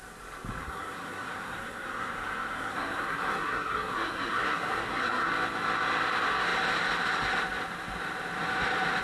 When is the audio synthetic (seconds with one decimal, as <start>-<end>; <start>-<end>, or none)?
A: 0.6-5.3